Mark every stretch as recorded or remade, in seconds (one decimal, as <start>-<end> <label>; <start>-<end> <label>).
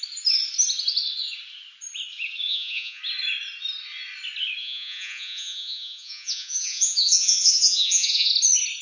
0.0-2.5 recorded; 2.5-3.0 remade; 3.0-4.6 recorded; 4.6-8.3 remade; 8.3-8.8 recorded